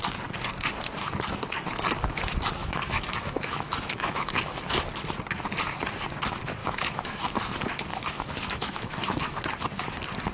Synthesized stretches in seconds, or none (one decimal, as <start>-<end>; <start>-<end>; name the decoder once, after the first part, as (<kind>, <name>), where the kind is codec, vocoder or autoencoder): 2.6-4.5 (autoencoder, DAC-VAE); 6.6-7.3; 7.9-9.4